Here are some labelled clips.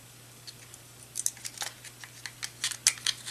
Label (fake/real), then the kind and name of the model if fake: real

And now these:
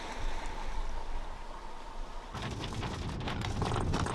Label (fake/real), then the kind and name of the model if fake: real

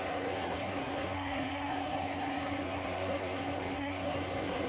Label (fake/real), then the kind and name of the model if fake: fake, codec, SNAC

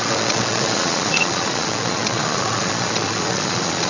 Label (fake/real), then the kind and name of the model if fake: fake, vocoder, Vocos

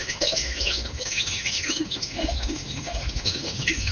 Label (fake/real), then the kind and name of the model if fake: fake, autoencoder, DAC-VAE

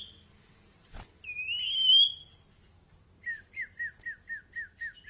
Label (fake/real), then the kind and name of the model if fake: real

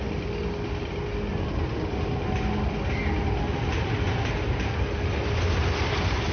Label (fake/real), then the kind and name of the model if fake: real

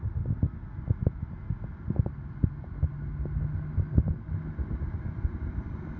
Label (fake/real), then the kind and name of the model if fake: real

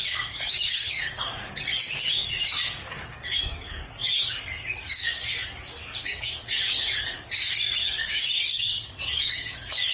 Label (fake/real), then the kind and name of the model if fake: fake, codec, DAC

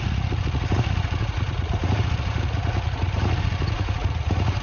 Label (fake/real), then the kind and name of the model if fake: fake, vocoder, Vocos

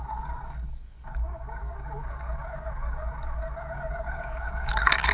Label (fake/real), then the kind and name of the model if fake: fake, codec, DAC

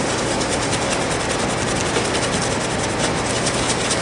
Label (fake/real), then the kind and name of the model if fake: real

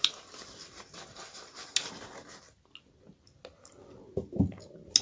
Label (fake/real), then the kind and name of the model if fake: real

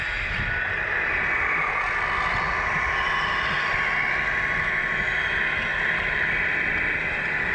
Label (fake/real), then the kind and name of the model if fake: real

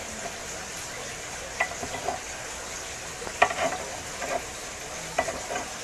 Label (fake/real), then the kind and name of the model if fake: real